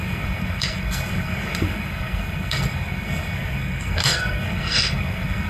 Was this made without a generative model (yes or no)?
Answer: no